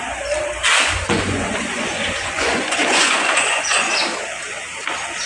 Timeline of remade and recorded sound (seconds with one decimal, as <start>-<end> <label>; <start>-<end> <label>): 0.0-0.7 recorded; 0.7-3.9 remade; 3.9-5.3 recorded